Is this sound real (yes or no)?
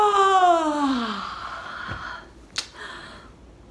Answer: yes